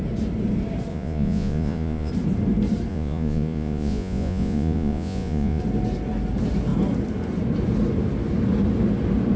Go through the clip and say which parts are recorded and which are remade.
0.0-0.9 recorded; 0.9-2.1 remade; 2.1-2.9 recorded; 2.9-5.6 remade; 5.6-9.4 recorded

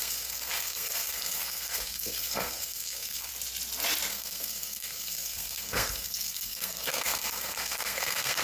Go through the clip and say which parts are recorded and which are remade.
0.0-3.3 remade; 3.3-4.1 recorded; 4.1-8.4 remade

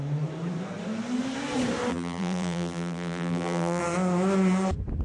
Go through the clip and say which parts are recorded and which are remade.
0.0-1.9 recorded; 1.9-3.8 remade; 3.8-5.0 recorded

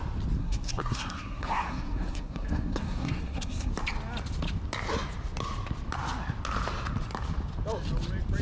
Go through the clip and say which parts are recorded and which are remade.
0.0-0.4 recorded; 0.4-3.7 remade; 3.7-8.4 recorded

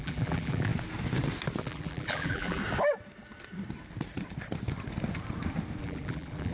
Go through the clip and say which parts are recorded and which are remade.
0.0-0.7 remade; 0.7-1.6 recorded; 1.6-2.6 remade; 2.6-5.8 recorded; 5.8-6.5 remade